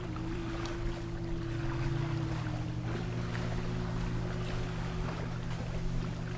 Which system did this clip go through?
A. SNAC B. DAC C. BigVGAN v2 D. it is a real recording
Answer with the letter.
D